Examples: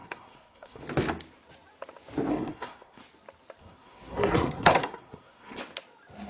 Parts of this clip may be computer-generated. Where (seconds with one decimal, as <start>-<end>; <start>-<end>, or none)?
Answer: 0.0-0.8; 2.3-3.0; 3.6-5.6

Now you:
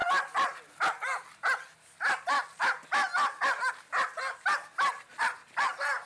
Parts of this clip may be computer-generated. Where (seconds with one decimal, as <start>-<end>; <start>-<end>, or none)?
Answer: none

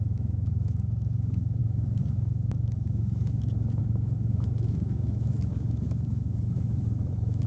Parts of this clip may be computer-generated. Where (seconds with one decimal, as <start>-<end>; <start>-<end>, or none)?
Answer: 0.0-7.5

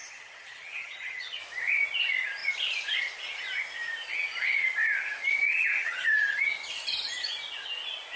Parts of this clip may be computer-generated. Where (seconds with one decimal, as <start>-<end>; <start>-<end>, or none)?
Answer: 0.0-1.4; 5.5-6.4

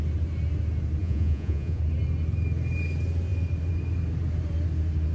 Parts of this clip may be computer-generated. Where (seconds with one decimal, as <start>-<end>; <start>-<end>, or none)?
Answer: 1.0-1.8